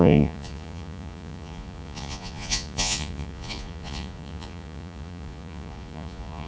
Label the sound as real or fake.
fake